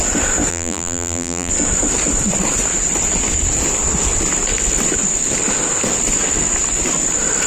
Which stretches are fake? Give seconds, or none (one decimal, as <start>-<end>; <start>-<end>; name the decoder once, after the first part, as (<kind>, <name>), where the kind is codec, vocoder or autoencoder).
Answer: 0.5-1.5 (vocoder, BigVGAN v2)